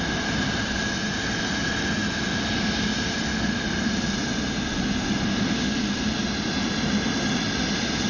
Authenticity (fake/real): real